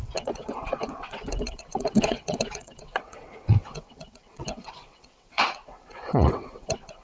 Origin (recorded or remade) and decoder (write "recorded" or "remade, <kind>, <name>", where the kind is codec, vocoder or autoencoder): remade, vocoder, WaveNeXt